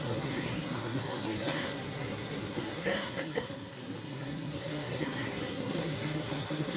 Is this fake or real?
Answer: fake